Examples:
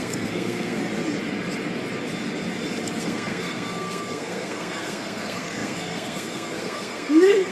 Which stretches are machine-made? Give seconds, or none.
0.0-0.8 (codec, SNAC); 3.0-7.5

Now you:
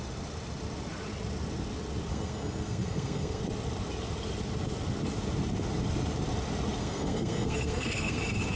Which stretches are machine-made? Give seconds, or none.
2.1-3.4 (codec, SNAC); 6.8-8.2